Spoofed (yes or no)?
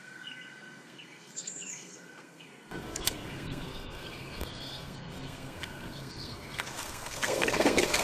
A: yes